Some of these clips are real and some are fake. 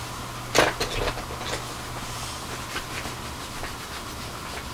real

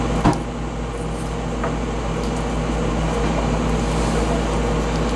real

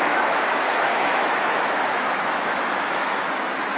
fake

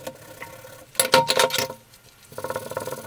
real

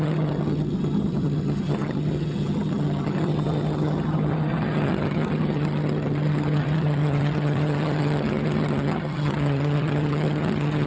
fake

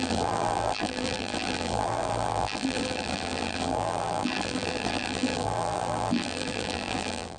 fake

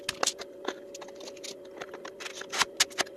real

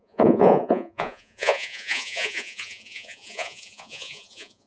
fake